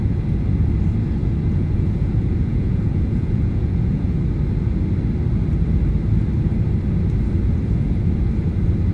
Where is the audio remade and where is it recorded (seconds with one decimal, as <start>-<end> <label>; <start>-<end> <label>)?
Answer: 0.0-1.2 recorded; 1.2-4.2 remade; 4.2-8.9 recorded